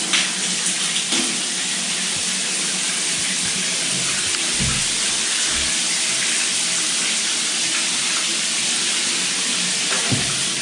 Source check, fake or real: real